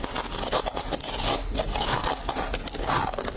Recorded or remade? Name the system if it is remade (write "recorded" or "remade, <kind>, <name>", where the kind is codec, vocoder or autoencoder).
recorded